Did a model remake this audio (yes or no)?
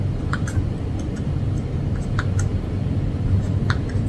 no